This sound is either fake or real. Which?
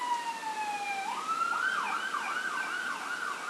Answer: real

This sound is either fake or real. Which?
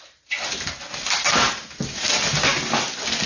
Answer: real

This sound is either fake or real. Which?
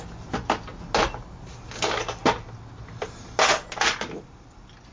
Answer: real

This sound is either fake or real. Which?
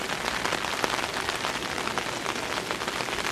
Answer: real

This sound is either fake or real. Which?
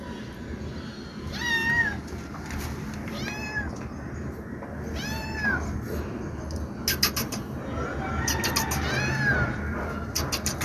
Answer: real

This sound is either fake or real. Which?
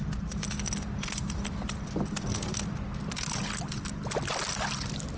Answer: real